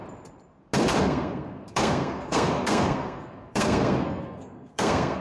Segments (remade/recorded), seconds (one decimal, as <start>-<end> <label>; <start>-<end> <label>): 0.0-1.0 recorded; 1.0-5.2 remade